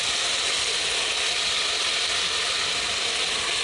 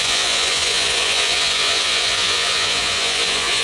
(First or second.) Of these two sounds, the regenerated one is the second